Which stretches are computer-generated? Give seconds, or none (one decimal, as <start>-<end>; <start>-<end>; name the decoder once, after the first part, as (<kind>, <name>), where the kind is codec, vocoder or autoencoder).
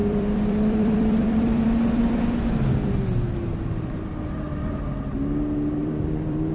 0.0-2.2 (vocoder, BigVGAN v2); 5.8-6.5